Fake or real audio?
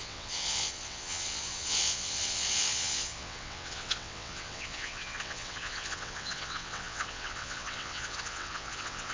fake